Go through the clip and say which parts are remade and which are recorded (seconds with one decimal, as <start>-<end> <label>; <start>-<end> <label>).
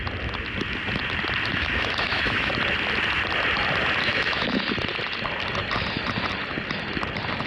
0.0-1.5 recorded; 1.5-2.5 remade; 2.5-4.0 recorded; 4.0-4.6 remade; 4.6-7.5 recorded